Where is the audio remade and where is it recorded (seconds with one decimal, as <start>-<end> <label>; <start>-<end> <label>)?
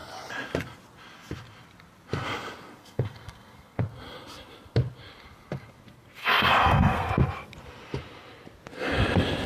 0.0-2.8 recorded; 2.8-3.8 remade; 3.8-6.2 recorded; 6.2-7.1 remade; 7.1-9.5 recorded